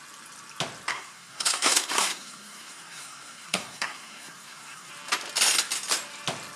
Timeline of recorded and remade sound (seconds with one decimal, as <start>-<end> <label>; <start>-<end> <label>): 0.0-0.9 recorded; 0.9-4.9 remade; 4.9-6.6 recorded